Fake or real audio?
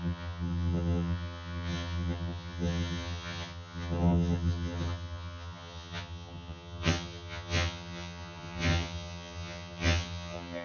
fake